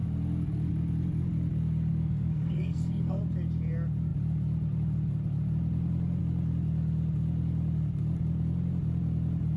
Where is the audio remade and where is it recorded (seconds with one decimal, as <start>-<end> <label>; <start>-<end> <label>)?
0.0-1.9 recorded; 1.9-3.2 remade; 3.2-9.6 recorded